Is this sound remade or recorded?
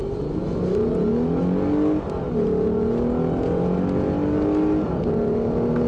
recorded